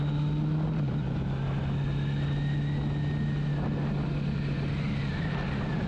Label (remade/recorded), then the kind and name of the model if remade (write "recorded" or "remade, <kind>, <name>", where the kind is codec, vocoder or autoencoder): recorded